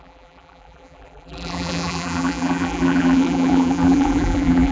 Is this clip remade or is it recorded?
remade